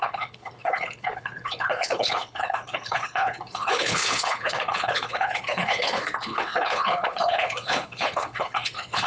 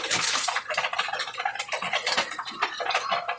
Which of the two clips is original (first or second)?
second